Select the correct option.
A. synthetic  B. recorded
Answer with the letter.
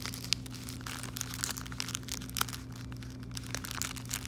B